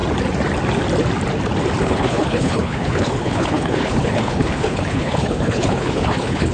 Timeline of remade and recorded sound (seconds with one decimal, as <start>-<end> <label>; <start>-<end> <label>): 0.0-1.8 recorded; 1.8-6.5 remade